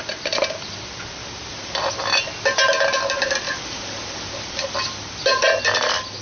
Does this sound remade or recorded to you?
recorded